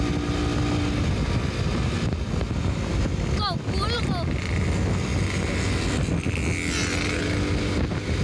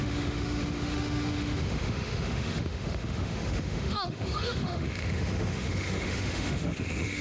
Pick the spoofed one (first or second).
second